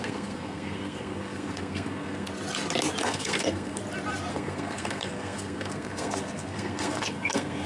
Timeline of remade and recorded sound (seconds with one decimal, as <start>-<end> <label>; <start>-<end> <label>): 0.0-2.3 remade; 2.3-3.0 recorded; 3.0-3.8 remade; 3.8-4.3 recorded; 4.3-7.7 remade